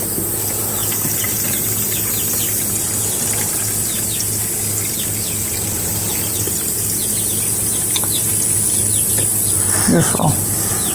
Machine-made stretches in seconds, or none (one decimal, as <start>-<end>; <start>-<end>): none